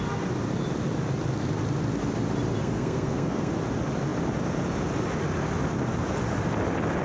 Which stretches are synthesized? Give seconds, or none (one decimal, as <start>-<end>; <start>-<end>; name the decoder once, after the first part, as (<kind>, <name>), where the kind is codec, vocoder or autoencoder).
2.6-3.5 (codec, SNAC)